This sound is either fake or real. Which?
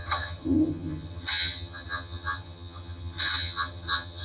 fake